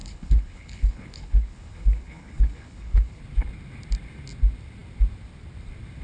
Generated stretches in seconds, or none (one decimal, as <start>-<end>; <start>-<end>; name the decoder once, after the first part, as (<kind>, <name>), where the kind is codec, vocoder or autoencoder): 0.0-3.2 (codec, HILCodec)